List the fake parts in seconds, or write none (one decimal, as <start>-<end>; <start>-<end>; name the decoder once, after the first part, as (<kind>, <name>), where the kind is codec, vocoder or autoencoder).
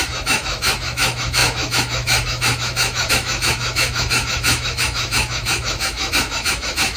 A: 0.0-7.0 (autoencoder, DAC-VAE)